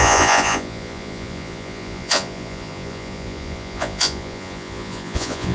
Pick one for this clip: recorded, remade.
remade